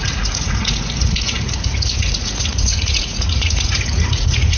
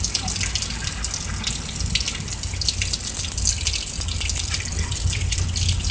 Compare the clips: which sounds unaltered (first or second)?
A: second